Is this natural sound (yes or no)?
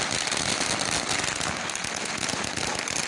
yes